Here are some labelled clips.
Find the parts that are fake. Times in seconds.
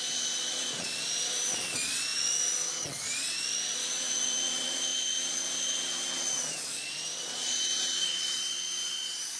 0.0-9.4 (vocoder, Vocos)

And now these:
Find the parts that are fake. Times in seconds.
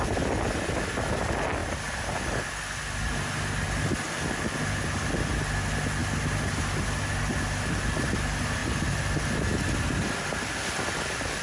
none